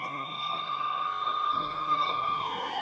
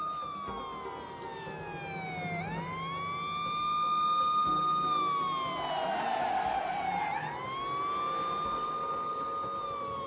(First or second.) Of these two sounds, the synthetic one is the first